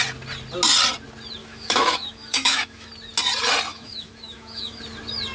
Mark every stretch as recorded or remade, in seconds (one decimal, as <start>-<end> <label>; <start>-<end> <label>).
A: 0.0-1.4 recorded; 1.4-2.9 remade; 2.9-3.7 recorded; 3.7-4.8 remade; 4.8-5.3 recorded